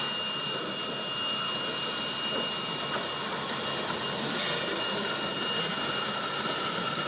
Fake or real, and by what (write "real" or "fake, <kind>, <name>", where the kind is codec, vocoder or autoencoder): real